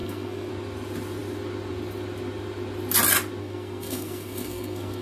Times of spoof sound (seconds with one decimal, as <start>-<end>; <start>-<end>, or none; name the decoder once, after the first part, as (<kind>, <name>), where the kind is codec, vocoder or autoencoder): 0.0-0.5 (codec, SNAC); 3.4-5.0